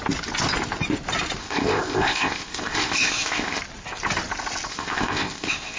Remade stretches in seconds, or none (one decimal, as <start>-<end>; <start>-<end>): 1.4-3.6; 4.7-5.8